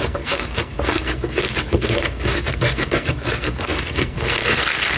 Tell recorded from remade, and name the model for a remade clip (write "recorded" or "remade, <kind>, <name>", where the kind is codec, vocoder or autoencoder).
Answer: remade, codec, SNAC